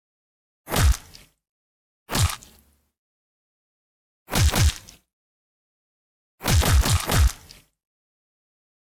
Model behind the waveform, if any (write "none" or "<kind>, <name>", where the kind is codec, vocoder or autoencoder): none